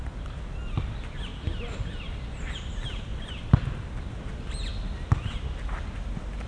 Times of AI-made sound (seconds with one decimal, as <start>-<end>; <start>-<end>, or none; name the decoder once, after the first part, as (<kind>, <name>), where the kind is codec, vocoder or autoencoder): 1.3-2.1 (vocoder, BigVGAN v2); 4.7-5.4